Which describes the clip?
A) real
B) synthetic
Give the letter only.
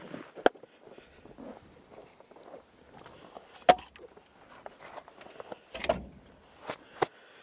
A